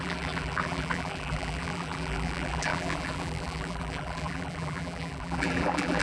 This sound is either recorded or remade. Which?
remade